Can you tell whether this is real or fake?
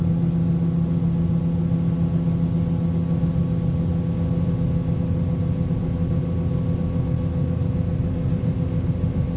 real